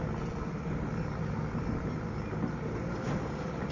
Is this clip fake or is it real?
real